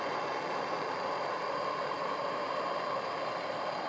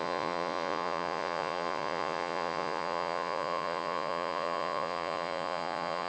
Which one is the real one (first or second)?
first